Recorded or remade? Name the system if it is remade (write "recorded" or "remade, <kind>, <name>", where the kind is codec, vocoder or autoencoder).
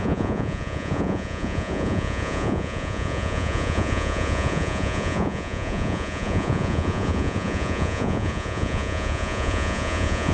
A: remade, vocoder, Vocos